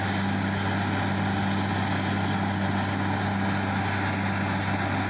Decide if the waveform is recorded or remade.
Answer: recorded